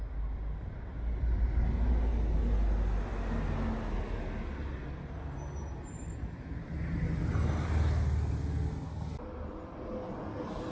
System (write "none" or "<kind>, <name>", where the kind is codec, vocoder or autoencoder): none